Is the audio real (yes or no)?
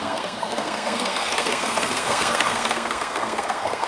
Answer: no